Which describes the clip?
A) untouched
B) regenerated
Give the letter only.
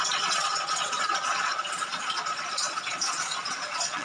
B